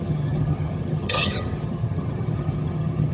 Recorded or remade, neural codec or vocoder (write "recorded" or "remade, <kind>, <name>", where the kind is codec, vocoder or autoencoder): remade, vocoder, HiFi-GAN